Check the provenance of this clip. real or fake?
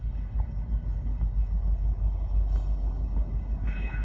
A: fake